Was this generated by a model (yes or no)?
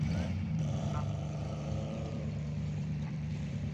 yes